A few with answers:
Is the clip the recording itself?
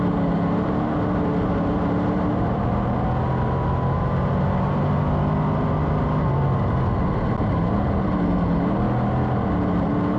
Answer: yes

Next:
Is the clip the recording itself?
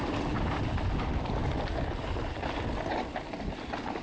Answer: yes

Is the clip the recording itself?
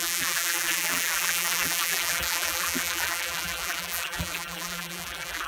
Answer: no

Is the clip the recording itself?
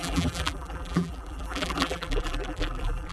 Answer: no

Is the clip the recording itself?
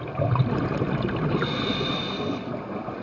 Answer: yes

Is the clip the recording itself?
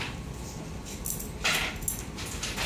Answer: yes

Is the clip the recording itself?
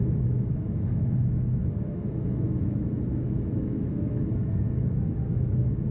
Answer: no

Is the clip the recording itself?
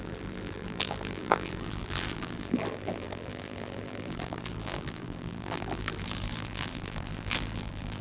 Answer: no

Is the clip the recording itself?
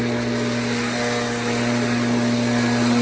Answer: yes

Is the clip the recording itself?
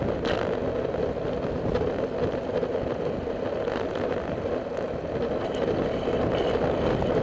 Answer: yes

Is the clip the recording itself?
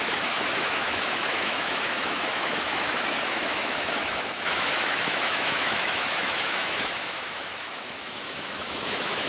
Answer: no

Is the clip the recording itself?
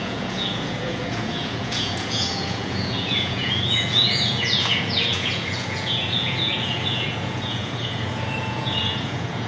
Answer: no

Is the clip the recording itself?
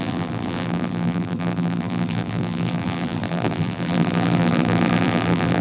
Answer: no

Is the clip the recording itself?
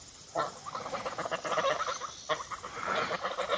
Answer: yes